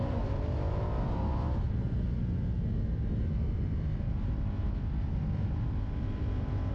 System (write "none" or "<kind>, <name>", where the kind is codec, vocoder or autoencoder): none